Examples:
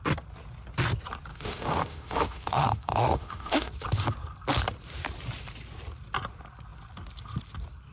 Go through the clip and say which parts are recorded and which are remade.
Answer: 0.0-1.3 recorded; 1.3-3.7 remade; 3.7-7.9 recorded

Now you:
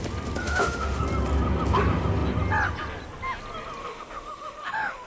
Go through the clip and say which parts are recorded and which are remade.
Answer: 0.0-0.4 recorded; 0.4-1.0 remade; 1.0-3.8 recorded; 3.8-5.1 remade

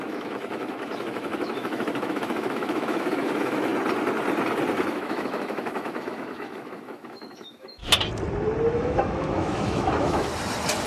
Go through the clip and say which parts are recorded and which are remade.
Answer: 0.0-3.7 remade; 3.7-4.9 recorded; 4.9-7.8 remade; 7.8-8.7 recorded; 8.7-10.3 remade; 10.3-10.9 recorded